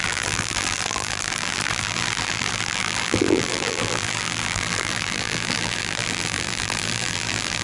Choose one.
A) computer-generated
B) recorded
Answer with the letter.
A